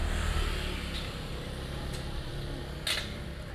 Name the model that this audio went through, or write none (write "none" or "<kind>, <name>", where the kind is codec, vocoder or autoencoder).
none